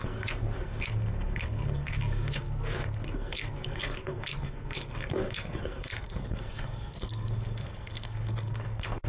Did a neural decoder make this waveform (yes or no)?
yes